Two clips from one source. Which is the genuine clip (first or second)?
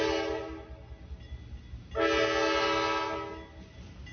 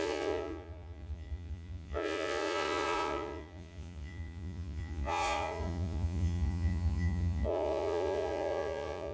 first